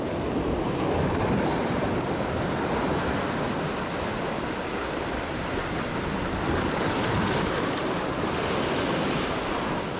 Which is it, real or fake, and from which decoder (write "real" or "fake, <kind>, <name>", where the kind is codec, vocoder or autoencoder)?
real